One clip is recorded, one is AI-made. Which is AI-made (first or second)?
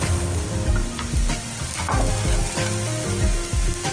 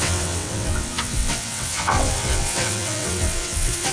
second